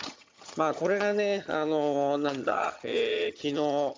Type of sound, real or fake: fake